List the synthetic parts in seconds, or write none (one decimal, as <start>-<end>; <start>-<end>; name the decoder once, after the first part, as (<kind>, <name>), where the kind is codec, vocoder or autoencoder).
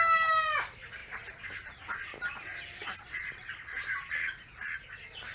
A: none